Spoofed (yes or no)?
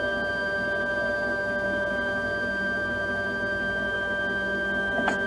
no